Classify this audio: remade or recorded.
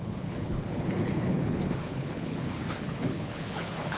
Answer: remade